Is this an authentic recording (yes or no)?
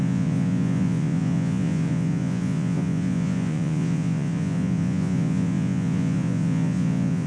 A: no